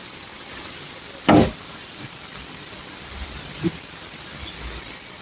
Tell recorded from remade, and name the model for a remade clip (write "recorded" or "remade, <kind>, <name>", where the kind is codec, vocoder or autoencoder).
recorded